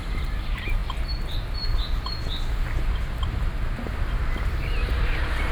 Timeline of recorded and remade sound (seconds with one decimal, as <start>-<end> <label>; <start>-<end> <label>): 0.0-0.8 remade; 0.8-4.1 recorded; 4.1-5.5 remade